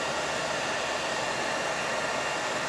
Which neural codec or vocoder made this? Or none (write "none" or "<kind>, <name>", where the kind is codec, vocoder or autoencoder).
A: none